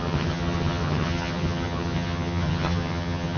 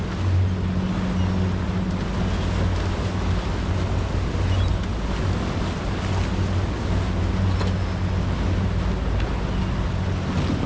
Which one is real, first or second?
second